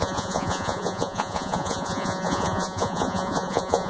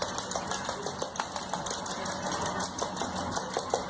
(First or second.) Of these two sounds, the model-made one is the first